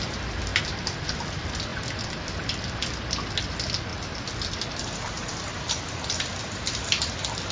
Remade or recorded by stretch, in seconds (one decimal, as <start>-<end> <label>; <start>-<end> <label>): 0.0-3.9 recorded; 3.9-6.6 remade; 6.6-7.5 recorded